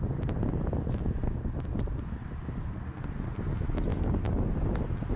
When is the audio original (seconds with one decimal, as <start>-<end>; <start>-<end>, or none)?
0.0-5.2